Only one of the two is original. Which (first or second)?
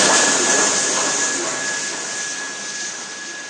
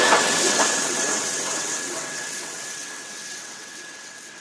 first